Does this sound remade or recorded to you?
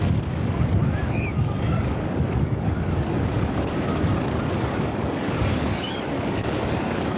remade